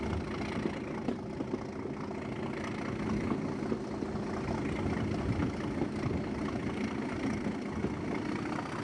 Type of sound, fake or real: real